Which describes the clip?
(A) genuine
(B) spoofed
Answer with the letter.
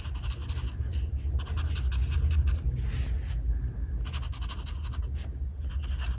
A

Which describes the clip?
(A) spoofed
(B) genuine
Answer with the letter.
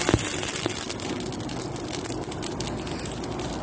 B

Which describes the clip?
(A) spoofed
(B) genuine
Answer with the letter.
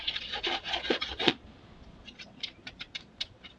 A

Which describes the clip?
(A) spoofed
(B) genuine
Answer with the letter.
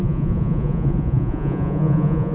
A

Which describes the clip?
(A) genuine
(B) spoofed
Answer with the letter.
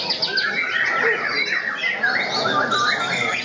A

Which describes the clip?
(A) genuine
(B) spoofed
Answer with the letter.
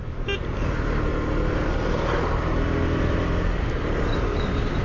A